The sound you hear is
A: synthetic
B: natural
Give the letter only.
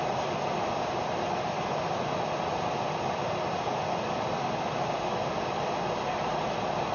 B